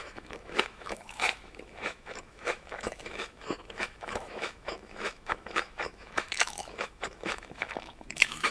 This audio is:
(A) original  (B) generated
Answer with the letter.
B